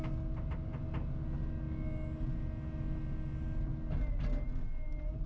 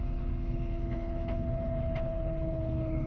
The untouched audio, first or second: first